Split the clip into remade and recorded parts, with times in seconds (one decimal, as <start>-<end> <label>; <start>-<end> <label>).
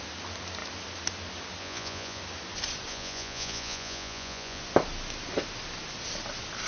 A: 0.0-1.6 recorded; 1.6-2.2 remade; 2.2-2.9 recorded; 2.9-4.6 remade; 4.6-6.7 recorded